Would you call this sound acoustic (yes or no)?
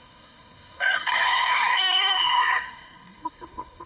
no